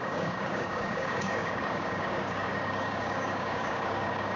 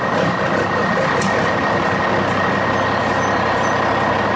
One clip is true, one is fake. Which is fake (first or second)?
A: first